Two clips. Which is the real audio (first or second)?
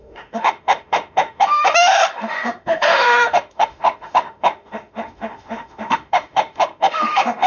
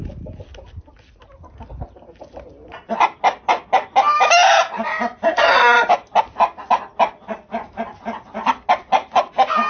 second